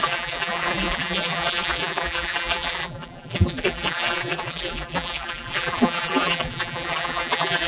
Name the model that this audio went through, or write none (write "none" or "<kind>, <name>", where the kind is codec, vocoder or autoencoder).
vocoder, BigVGAN v2